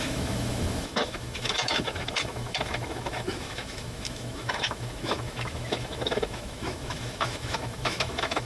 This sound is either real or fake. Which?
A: fake